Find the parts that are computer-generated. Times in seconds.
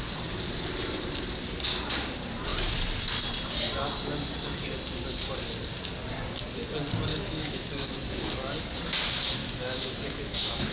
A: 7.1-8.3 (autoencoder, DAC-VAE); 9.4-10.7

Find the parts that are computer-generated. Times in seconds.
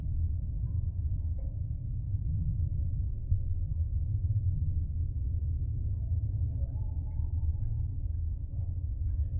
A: 3.7-5.4 (autoencoder, DAC-VAE)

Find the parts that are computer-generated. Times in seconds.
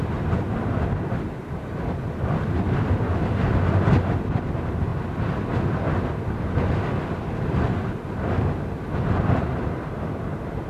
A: none